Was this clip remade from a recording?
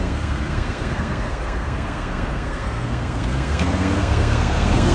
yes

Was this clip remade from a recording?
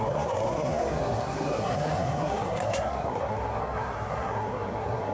yes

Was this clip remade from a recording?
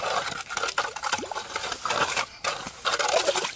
no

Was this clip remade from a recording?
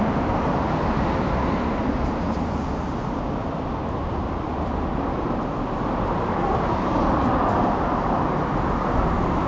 no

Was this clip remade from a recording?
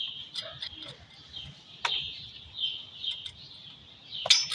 no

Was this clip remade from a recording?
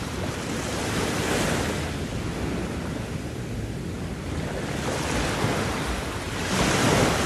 no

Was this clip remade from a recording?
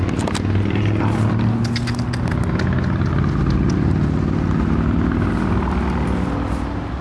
no